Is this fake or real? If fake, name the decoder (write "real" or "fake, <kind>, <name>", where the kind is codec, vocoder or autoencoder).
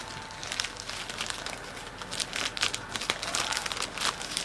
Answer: real